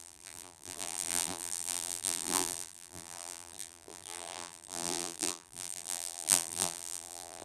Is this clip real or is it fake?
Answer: fake